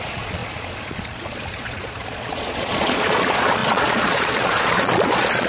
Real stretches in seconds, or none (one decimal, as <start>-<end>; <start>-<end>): none